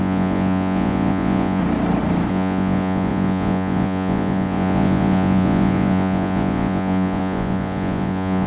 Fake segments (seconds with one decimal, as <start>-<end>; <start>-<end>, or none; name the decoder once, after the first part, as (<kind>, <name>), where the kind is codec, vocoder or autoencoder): 0.0-1.6 (vocoder, Vocos); 2.3-8.5